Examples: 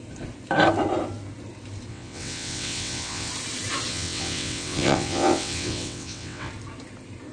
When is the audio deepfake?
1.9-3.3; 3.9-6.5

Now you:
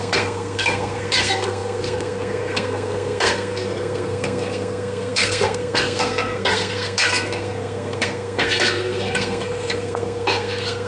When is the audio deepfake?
0.0-10.9

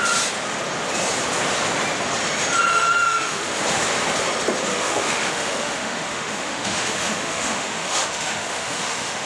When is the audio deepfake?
2.7-3.5; 4.7-9.3

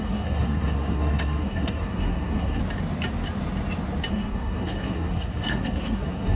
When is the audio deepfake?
0.0-2.6; 4.1-6.4

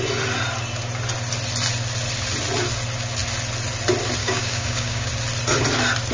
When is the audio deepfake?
4.2-5.1

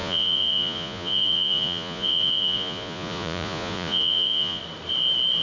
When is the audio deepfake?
0.0-4.6